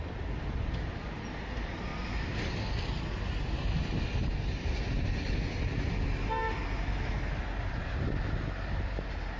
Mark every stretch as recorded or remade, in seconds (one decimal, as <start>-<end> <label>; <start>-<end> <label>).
0.0-9.4 recorded